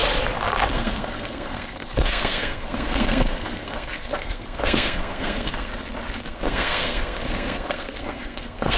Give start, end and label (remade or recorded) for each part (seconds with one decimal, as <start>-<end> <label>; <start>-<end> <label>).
0.0-0.7 recorded; 0.7-5.7 remade; 5.7-6.2 recorded; 6.2-8.8 remade